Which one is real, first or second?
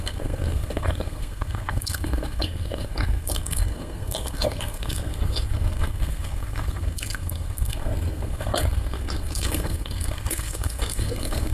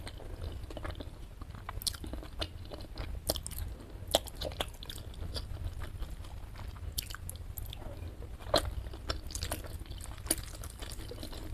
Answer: second